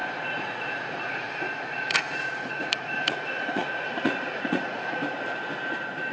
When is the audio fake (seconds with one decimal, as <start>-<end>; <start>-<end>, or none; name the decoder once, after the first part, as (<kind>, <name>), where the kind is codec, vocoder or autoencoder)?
0.0-5.0 (vocoder, Vocos)